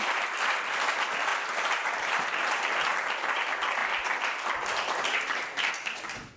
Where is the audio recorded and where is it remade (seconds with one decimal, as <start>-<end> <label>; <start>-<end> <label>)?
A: 0.0-1.3 recorded; 1.3-2.7 remade; 2.7-6.4 recorded